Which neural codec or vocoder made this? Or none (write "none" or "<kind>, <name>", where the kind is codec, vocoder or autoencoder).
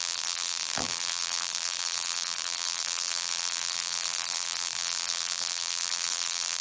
vocoder, BigVGAN v2